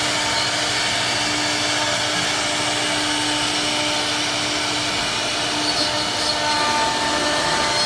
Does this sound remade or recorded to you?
recorded